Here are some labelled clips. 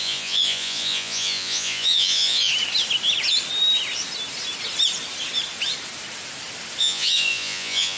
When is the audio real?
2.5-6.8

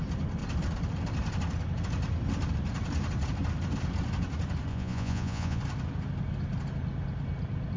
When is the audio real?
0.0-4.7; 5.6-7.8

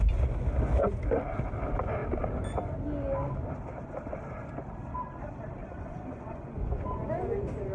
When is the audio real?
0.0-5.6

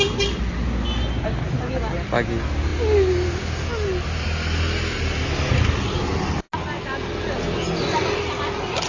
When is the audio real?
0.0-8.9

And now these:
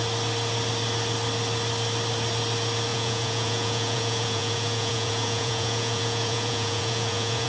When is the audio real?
0.0-2.9

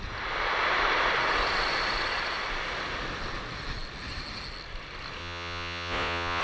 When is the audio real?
0.0-5.2

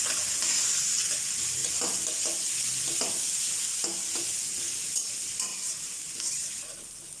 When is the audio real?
0.0-3.7; 5.1-5.5; 6.0-7.2